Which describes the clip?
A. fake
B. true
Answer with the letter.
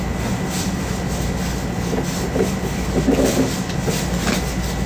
B